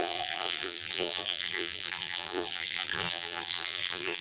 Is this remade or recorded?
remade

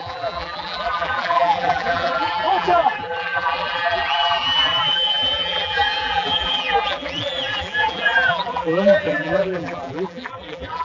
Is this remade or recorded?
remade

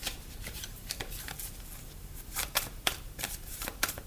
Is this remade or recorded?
remade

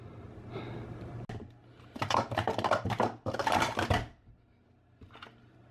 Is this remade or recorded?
recorded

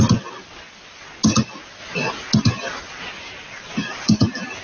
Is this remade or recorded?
recorded